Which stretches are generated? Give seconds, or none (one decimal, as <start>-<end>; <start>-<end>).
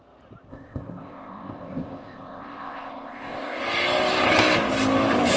0.5-3.6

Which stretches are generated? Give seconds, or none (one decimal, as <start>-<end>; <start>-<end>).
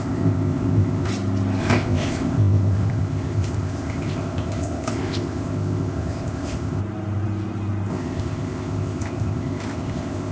0.0-1.1; 1.6-6.8; 7.9-10.3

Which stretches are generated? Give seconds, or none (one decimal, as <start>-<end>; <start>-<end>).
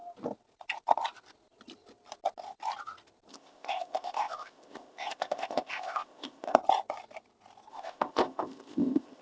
3.3-6.6; 7.7-9.2